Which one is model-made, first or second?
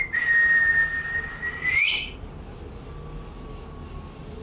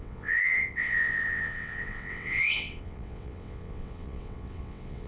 second